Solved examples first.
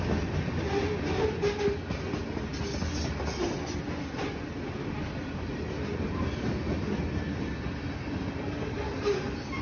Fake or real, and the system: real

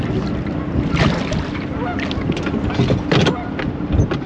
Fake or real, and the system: real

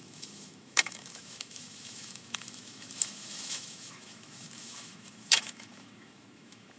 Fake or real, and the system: fake, autoencoder, DAC-VAE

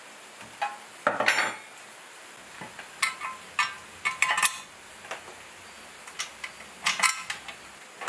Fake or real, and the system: real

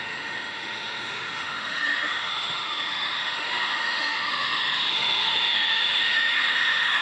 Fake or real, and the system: fake, autoencoder, DAC-VAE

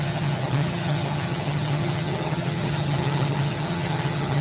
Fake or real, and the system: fake, vocoder, HiFi-GAN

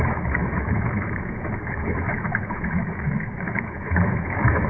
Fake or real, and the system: fake, autoencoder, DAC-VAE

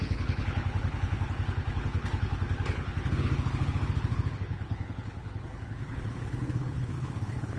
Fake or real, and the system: fake, codec, HILCodec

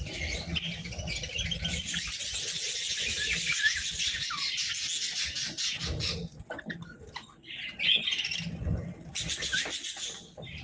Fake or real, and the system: real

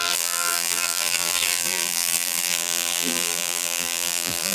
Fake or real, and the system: fake, vocoder, BigVGAN v2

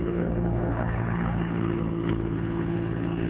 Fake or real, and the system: fake, codec, HILCodec